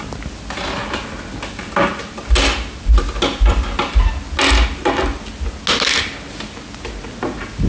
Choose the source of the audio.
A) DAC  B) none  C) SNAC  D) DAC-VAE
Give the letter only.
B